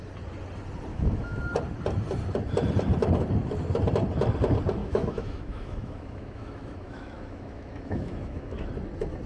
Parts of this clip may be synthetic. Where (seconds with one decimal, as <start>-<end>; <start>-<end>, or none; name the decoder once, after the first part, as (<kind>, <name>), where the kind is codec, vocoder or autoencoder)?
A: 0.9-1.4 (autoencoder, DAC-VAE); 4.8-8.7